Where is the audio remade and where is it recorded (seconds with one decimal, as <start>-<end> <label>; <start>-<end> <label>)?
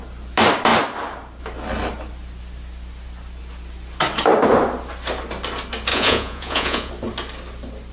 0.0-5.9 recorded; 5.9-6.9 remade; 6.9-7.9 recorded